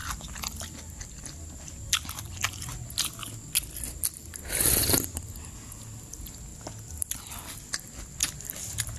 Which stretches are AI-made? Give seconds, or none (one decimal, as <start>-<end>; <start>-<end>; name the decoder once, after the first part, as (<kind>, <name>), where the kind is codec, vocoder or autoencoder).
none